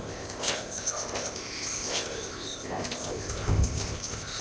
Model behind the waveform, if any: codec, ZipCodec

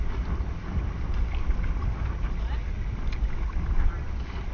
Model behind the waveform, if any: none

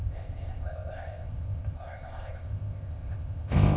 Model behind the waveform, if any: codec, ZipCodec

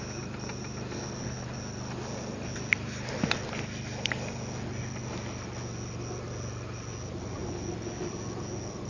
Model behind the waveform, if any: none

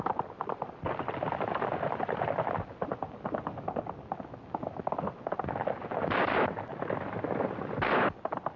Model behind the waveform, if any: none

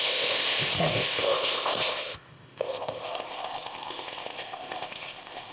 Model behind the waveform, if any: codec, ZipCodec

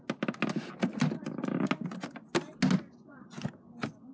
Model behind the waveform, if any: none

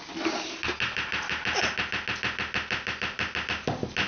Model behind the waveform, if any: none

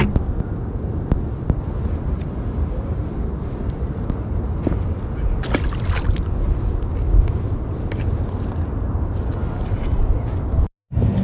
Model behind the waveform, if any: none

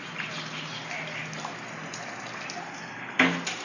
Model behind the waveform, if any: none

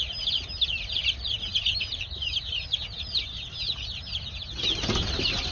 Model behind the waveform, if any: none